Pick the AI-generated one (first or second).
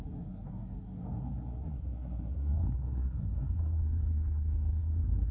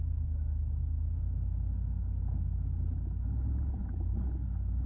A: first